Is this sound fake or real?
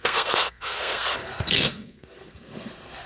fake